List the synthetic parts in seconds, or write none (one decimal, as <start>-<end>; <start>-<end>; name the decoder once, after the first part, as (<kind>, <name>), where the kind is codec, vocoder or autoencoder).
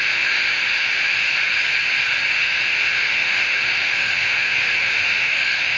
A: 0.0-1.4 (autoencoder, DAC-VAE); 2.3-5.8